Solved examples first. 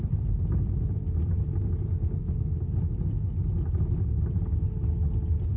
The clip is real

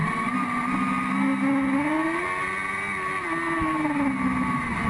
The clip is real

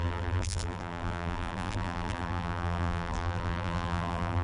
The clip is fake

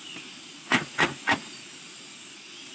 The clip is real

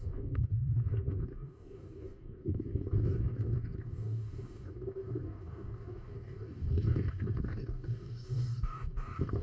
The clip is fake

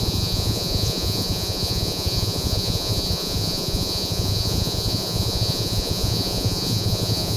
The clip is fake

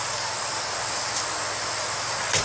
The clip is real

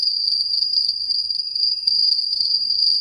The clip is fake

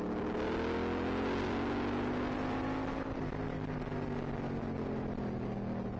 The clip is real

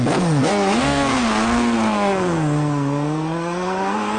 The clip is fake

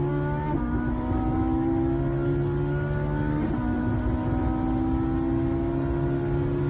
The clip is real